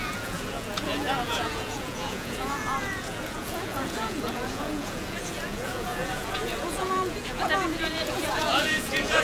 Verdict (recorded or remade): remade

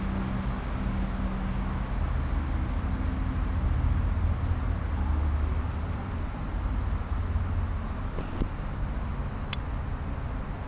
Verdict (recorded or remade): recorded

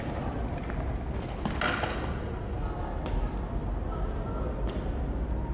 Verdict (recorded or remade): recorded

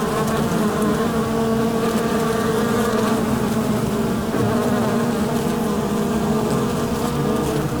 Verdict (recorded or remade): recorded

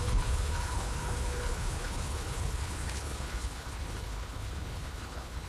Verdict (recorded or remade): remade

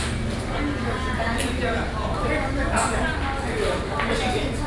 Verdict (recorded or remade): recorded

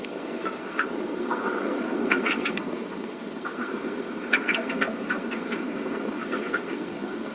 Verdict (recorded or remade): remade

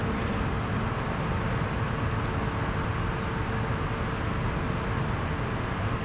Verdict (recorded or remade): recorded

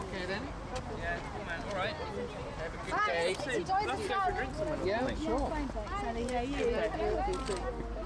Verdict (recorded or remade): recorded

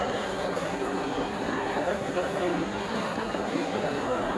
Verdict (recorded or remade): remade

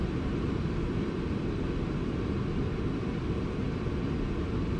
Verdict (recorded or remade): recorded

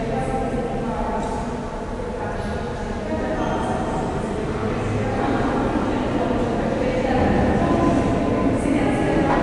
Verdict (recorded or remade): recorded